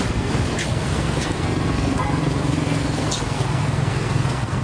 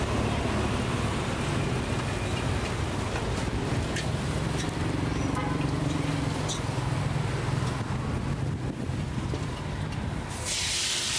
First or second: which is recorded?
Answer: second